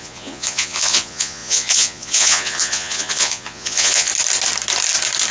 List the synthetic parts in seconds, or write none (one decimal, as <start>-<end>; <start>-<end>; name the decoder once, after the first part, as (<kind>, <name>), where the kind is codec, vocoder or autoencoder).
0.0-4.1 (vocoder, Vocos)